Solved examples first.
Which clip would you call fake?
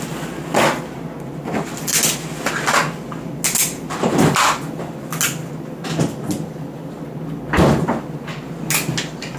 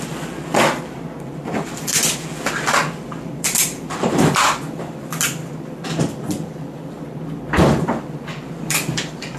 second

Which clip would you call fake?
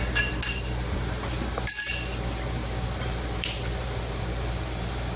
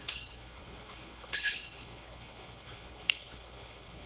second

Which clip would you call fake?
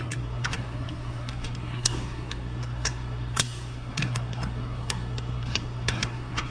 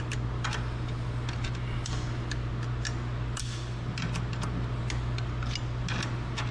first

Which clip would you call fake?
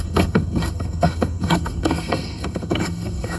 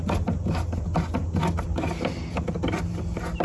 first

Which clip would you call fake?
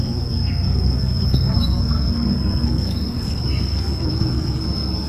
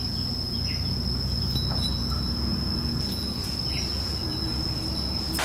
first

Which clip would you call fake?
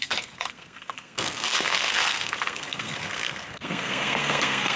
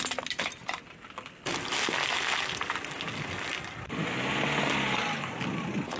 first